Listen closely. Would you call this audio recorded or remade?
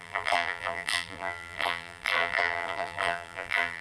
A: remade